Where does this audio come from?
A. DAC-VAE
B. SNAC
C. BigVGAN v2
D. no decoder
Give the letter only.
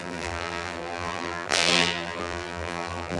C